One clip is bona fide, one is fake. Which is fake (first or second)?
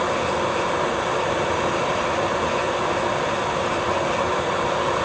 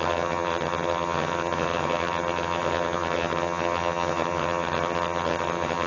second